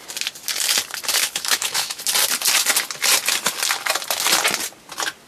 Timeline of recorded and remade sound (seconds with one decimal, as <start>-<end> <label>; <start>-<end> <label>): 0.0-1.2 recorded; 1.2-2.0 remade; 2.0-5.3 recorded